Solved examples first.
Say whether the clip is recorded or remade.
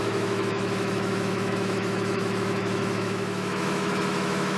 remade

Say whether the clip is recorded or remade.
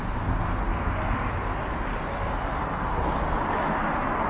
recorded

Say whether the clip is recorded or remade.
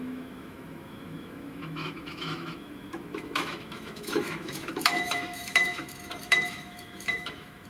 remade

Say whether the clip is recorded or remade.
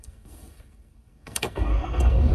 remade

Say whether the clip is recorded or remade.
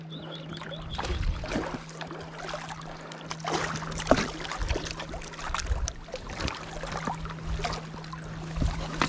recorded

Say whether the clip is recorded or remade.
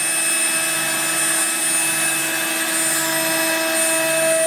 recorded